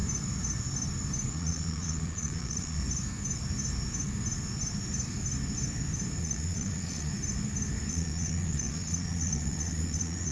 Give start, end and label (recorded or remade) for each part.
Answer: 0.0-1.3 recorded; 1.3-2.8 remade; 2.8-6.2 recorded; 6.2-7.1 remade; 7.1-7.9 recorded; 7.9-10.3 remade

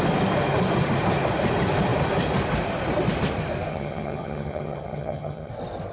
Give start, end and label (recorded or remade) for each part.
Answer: 0.0-3.7 recorded; 3.7-5.5 remade; 5.5-5.9 recorded

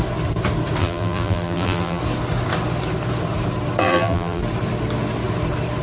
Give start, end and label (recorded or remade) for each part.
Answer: 0.0-0.8 recorded; 0.8-2.0 remade; 2.0-3.8 recorded; 3.8-4.4 remade; 4.4-5.8 recorded

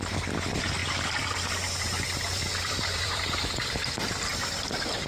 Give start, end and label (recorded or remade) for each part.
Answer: 0.0-0.8 recorded; 0.8-3.9 remade; 3.9-5.1 recorded

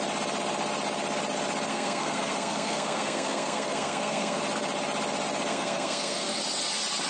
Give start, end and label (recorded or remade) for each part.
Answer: 0.0-1.7 recorded; 1.7-4.4 remade; 4.4-5.5 recorded; 5.5-6.4 remade; 6.4-7.1 recorded

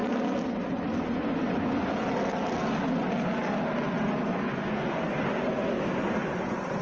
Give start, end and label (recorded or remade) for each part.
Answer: 0.0-4.3 recorded; 4.3-5.1 remade; 5.1-6.8 recorded